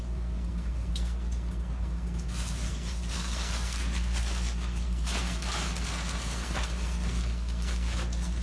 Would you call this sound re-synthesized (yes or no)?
yes